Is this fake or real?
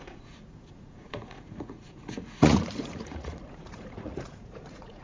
fake